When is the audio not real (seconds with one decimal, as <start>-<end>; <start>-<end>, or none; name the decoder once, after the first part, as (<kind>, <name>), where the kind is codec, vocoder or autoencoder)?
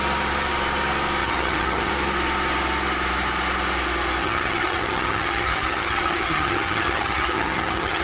1.2-1.9 (vocoder, HiFi-GAN); 4.2-8.0